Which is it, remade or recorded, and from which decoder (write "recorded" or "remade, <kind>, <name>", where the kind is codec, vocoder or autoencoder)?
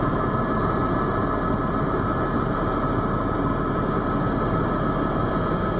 recorded